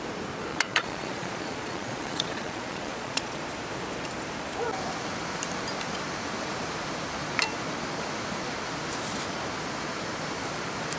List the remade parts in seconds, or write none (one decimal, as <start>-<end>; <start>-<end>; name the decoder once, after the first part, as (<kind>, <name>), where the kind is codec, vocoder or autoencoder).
0.5-3.4 (vocoder, Vocos)

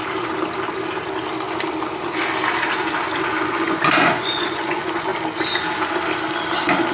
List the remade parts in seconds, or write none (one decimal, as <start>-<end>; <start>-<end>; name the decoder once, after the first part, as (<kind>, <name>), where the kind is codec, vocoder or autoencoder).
3.4-5.1 (vocoder, Vocos)

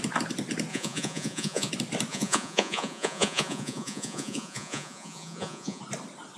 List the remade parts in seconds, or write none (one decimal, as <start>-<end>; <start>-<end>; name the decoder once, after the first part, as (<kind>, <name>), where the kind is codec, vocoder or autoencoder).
0.7-1.7 (vocoder, Vocos); 2.1-5.8

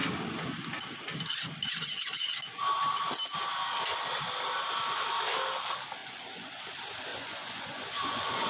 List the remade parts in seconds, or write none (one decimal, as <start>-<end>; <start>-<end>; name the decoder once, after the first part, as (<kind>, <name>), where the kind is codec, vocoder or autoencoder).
6.0-6.6 (vocoder, Vocos); 7.1-8.5